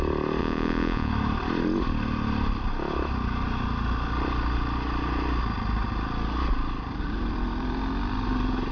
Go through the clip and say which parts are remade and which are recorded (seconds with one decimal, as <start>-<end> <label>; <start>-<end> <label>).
0.0-0.4 recorded; 0.4-1.1 remade; 1.1-8.7 recorded